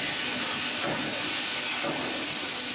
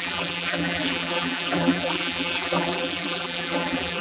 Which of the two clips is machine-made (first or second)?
second